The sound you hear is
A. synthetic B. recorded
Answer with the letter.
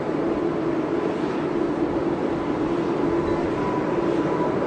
B